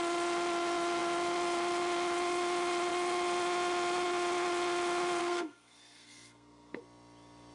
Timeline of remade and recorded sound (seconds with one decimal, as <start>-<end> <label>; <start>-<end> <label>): 0.0-5.2 recorded; 5.2-6.8 remade; 6.8-7.5 recorded